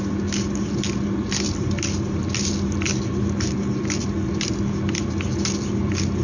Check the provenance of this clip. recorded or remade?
recorded